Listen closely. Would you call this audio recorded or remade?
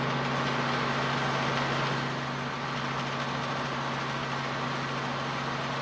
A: recorded